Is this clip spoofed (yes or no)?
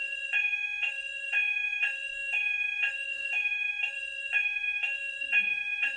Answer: yes